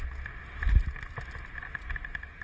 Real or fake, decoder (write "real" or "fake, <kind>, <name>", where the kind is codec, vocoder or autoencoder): real